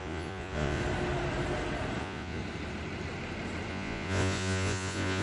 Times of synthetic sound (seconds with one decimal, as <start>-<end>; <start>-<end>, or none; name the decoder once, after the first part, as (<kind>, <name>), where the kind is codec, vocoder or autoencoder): 0.0-0.8 (vocoder, Vocos); 2.0-2.4; 3.7-5.2